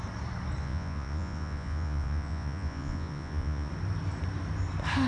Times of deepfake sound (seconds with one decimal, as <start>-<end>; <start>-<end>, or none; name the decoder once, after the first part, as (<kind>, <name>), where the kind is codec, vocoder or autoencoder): 0.6-3.7 (vocoder, Vocos)